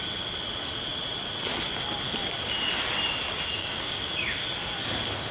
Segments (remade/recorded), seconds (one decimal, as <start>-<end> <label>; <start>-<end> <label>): 0.0-3.6 recorded; 3.6-4.4 remade; 4.4-5.3 recorded